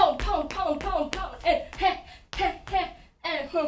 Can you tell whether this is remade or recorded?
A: recorded